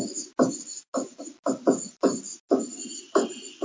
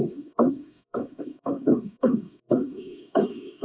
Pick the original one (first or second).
first